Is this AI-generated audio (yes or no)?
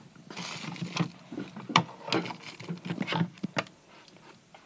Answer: no